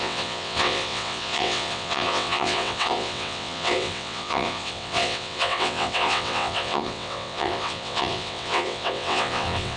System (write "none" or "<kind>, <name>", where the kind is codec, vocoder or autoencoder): vocoder, WaveNeXt